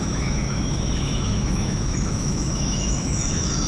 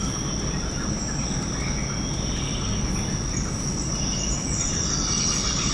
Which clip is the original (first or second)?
second